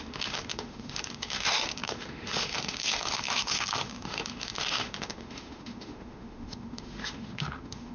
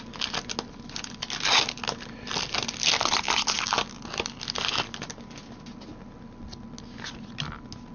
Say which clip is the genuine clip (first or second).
second